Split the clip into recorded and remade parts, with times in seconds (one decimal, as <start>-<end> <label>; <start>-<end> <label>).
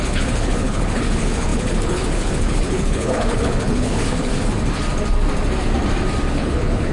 0.0-4.3 remade; 4.3-6.3 recorded; 6.3-6.9 remade